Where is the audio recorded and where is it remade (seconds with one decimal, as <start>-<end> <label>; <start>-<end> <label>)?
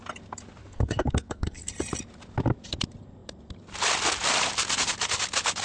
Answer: 0.0-0.6 recorded; 0.6-1.7 remade; 1.7-5.6 recorded